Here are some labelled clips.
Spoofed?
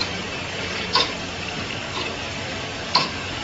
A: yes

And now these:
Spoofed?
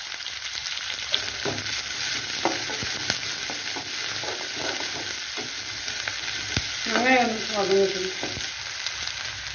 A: no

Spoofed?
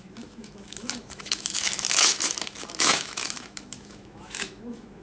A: yes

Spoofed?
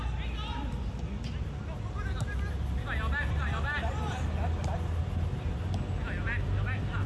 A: no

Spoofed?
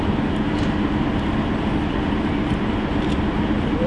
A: no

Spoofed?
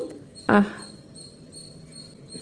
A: yes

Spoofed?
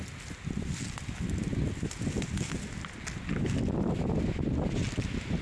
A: no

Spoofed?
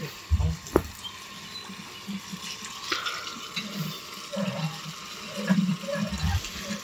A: no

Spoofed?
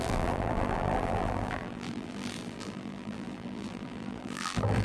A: yes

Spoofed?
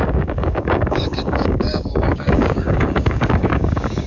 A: yes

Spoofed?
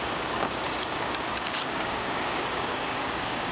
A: yes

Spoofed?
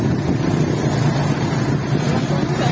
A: no